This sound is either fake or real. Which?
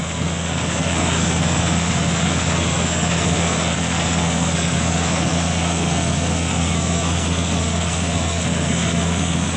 fake